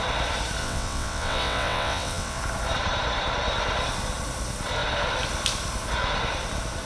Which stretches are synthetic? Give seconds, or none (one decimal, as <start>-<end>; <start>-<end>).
0.6-2.4